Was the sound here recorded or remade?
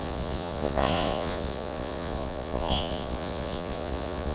remade